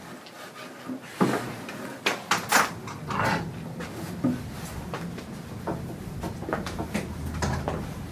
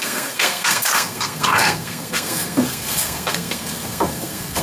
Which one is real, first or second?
first